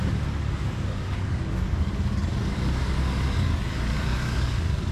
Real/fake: fake